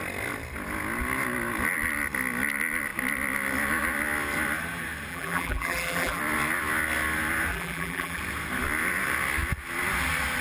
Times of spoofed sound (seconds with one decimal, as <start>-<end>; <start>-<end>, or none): 5.1-6.2; 7.5-8.2